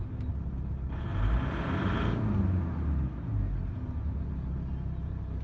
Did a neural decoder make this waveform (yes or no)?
no